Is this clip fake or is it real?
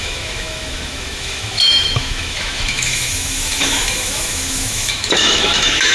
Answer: fake